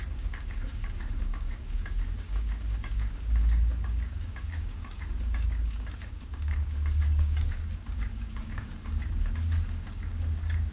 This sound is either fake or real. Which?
fake